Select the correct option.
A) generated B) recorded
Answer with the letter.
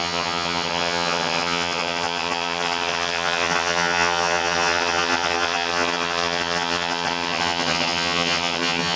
A